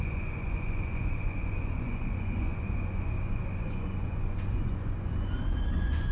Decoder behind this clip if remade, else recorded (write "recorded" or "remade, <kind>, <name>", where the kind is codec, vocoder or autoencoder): remade, vocoder, Vocos